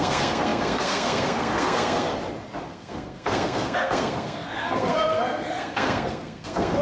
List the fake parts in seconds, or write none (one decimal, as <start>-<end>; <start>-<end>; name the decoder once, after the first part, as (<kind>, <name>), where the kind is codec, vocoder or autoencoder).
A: 0.0-2.1 (codec, SNAC); 2.7-6.8